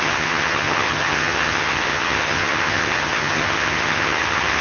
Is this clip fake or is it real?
fake